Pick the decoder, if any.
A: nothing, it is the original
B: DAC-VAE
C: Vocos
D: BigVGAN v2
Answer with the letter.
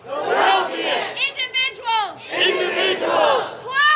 A